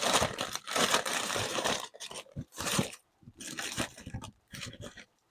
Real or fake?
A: fake